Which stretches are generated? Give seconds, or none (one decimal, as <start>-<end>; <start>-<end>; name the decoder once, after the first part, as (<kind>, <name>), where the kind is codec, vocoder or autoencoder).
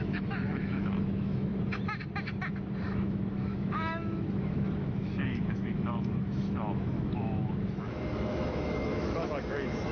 0.0-1.5 (autoencoder, DAC-VAE); 2.8-9.9